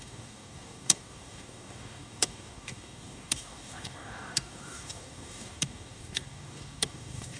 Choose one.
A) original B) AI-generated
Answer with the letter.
B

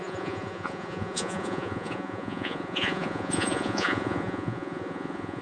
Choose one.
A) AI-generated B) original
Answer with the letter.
A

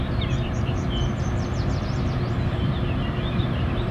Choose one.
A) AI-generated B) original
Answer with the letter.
A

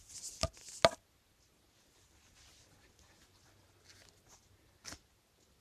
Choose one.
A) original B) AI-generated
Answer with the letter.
A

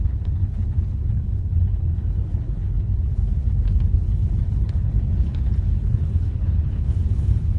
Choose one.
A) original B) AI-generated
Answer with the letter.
B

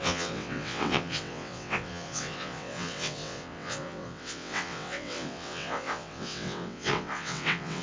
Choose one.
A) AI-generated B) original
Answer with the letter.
A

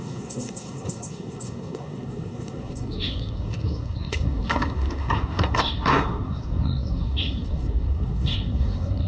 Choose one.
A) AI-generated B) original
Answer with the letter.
A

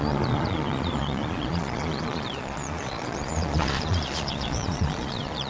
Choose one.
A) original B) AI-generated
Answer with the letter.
B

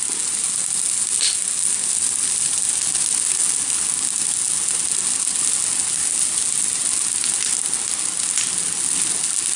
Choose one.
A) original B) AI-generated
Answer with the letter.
A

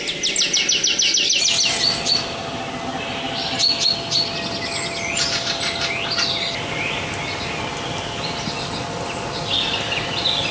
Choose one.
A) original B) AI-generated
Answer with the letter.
A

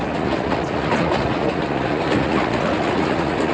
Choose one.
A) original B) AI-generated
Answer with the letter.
B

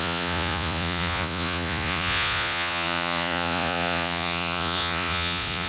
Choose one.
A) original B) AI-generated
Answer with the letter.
B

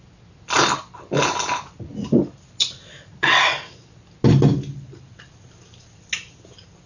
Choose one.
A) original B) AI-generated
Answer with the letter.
A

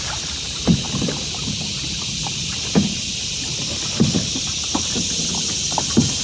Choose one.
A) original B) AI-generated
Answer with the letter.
A